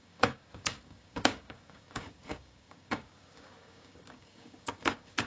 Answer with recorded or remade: remade